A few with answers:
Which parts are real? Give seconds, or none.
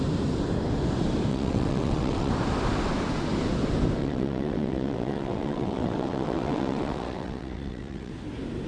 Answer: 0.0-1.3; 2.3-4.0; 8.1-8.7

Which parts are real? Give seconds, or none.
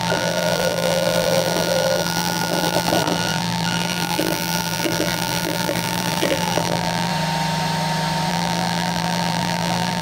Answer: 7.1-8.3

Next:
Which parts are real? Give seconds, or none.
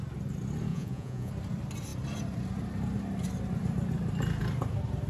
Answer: 0.0-0.7; 1.3-5.1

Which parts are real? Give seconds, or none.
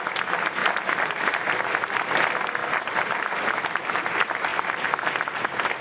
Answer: 0.0-2.6; 4.0-5.8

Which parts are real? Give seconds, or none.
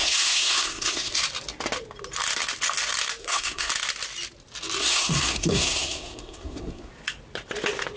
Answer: 1.1-3.2; 3.7-4.8; 6.9-8.0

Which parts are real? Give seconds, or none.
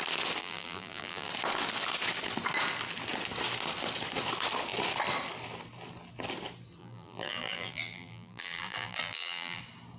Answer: 0.0-0.4; 1.3-6.8; 9.6-10.0